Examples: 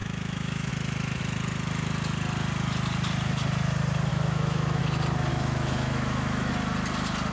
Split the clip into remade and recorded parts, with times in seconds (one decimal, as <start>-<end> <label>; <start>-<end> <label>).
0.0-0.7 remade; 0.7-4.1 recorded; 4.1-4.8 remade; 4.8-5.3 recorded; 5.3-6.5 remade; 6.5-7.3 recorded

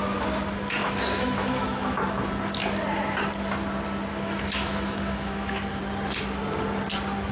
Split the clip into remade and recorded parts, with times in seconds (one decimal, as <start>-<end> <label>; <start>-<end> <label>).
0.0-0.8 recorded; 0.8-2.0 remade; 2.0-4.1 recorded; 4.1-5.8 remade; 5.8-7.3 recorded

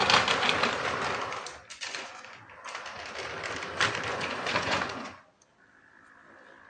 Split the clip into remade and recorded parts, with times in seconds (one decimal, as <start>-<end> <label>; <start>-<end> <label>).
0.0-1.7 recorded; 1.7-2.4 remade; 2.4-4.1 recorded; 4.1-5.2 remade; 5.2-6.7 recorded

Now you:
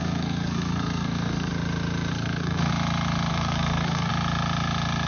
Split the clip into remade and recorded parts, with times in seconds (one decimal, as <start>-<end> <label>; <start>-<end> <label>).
0.0-1.5 remade; 1.5-2.1 recorded; 2.1-2.7 remade; 2.7-3.3 recorded; 3.3-4.1 remade; 4.1-5.1 recorded